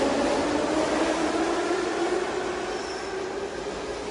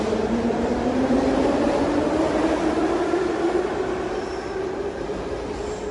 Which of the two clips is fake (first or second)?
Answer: second